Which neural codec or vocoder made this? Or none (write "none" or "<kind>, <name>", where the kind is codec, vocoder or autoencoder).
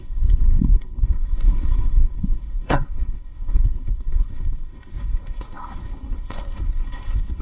codec, SNAC